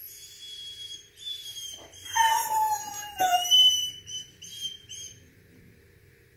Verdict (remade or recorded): remade